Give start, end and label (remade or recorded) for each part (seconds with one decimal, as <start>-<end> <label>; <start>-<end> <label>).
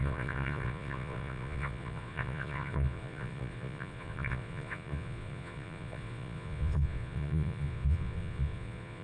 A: 0.0-9.0 remade